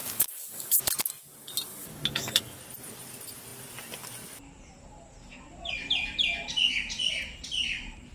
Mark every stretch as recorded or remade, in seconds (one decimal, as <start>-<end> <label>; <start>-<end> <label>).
0.0-0.8 remade; 0.8-1.8 recorded; 1.8-2.6 remade; 2.6-8.1 recorded